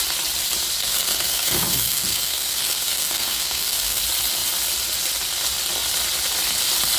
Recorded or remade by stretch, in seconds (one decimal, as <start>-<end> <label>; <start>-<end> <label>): 0.0-0.8 recorded; 0.8-4.0 remade; 4.0-7.0 recorded